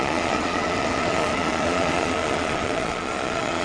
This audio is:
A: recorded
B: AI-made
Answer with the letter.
B